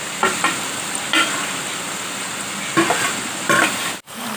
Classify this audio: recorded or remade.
recorded